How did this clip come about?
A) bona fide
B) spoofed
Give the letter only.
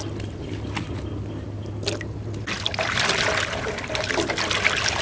A